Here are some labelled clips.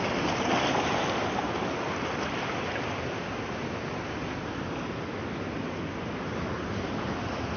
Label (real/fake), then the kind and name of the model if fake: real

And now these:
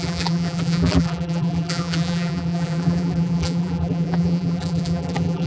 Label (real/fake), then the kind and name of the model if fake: fake, vocoder, BigVGAN v2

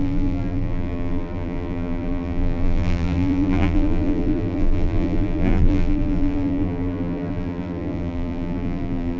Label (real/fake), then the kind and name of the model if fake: fake, vocoder, BigVGAN v2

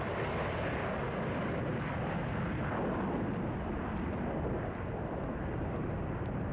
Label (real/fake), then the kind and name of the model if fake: real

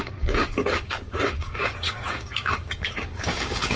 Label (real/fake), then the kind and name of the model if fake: fake, codec, DAC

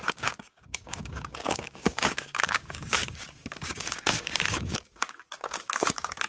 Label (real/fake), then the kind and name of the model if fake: fake, codec, DAC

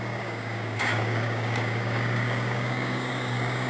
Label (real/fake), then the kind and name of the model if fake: fake, codec, DAC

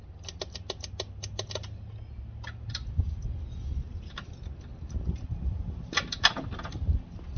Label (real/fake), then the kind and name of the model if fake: real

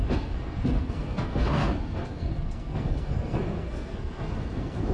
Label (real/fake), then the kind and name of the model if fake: fake, codec, SNAC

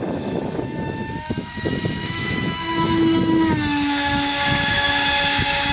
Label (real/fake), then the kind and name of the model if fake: fake, autoencoder, DAC-VAE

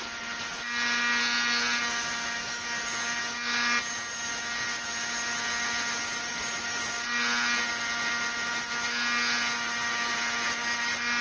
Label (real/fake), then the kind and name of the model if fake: real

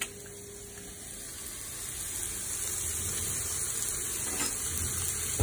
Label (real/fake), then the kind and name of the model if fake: real